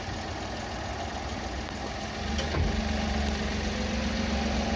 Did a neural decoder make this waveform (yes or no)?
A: no